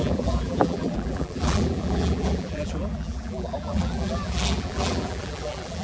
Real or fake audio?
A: fake